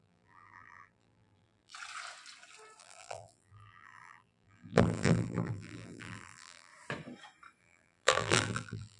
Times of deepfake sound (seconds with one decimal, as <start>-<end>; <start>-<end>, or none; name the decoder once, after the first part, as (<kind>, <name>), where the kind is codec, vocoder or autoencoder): 0.0-1.7 (vocoder, BigVGAN v2); 2.8-6.7; 7.6-9.0